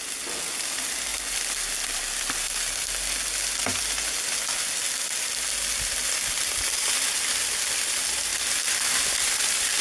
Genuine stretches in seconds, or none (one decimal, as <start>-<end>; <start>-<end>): 0.0-9.8